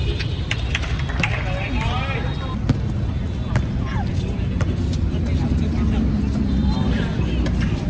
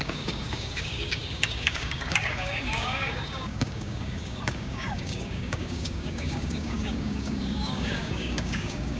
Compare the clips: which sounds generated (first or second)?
second